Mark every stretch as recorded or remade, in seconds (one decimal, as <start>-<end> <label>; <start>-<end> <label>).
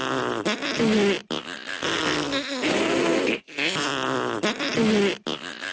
0.0-5.7 recorded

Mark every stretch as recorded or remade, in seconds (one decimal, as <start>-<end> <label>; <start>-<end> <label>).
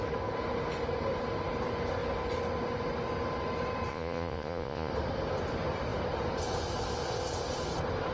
0.0-3.9 recorded; 3.9-4.9 remade; 4.9-8.1 recorded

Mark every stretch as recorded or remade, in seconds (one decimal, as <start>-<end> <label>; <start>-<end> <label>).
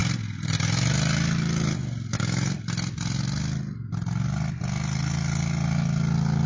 0.0-6.5 recorded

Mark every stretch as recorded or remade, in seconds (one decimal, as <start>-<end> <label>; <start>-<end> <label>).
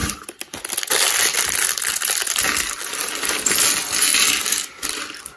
0.0-5.4 recorded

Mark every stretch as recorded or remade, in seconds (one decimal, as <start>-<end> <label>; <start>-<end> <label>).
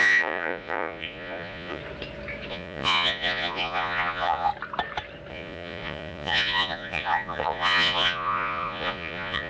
0.0-1.8 remade; 1.8-2.5 recorded; 2.5-4.5 remade; 4.5-5.3 recorded; 5.3-9.5 remade